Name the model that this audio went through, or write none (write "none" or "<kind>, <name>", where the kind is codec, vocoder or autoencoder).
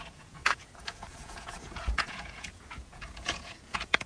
vocoder, Vocos